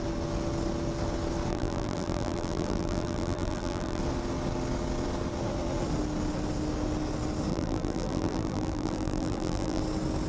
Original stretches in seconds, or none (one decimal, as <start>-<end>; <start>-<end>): 0.0-1.5; 4.0-7.5; 9.8-10.3